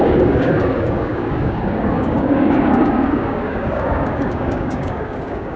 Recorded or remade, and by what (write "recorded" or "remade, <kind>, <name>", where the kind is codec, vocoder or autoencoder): remade, codec, DAC